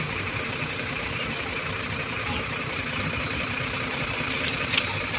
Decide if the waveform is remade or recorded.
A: remade